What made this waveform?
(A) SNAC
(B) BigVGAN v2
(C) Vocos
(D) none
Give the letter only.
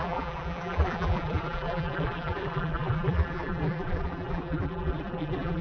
B